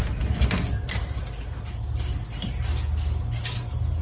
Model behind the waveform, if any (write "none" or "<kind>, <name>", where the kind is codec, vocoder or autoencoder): none